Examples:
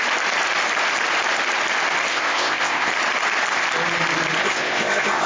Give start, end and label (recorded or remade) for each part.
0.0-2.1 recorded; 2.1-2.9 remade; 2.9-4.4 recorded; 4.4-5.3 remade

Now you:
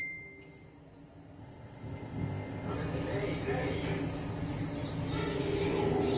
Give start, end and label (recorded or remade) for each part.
0.0-1.4 recorded; 1.4-2.7 remade; 2.7-6.2 recorded

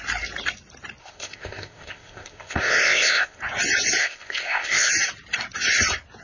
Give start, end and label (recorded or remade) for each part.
0.0-1.0 recorded; 1.0-3.4 remade; 3.4-4.0 recorded; 4.0-4.9 remade; 4.9-6.2 recorded

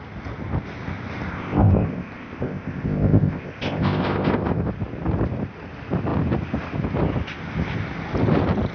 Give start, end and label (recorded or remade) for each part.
0.0-1.3 recorded; 1.3-4.7 remade; 4.7-8.7 recorded

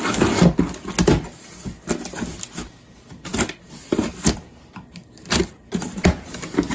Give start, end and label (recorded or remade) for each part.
0.0-6.7 recorded